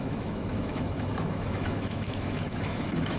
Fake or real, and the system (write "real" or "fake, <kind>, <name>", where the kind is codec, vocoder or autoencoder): fake, autoencoder, DAC-VAE